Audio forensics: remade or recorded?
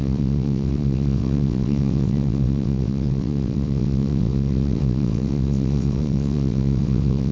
remade